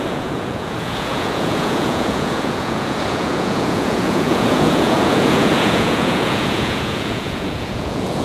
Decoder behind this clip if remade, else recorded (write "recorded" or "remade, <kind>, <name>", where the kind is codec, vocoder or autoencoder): remade, vocoder, Vocos